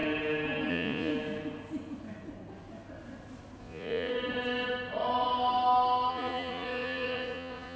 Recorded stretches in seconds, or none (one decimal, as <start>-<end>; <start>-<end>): 0.0-0.7; 1.1-3.6; 4.1-6.1